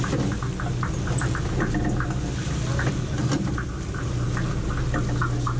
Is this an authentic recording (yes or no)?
yes